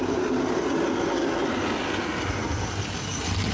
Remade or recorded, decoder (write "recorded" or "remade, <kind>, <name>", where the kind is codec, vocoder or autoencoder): recorded